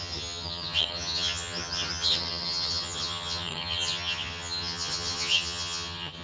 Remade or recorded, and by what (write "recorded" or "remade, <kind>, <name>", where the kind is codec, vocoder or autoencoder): remade, vocoder, HiFi-GAN